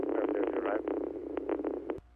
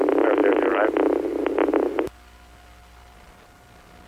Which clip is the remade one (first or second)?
first